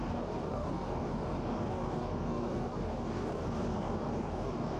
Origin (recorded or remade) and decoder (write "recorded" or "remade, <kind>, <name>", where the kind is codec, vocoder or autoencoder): remade, codec, DAC